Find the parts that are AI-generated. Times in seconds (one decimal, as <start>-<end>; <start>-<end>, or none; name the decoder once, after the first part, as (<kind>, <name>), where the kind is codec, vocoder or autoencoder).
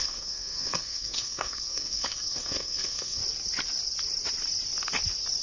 0.0-3.2 (codec, SNAC)